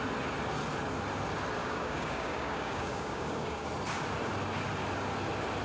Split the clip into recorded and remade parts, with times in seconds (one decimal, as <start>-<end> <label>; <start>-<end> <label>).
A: 0.0-1.6 recorded; 1.6-3.7 remade; 3.7-5.6 recorded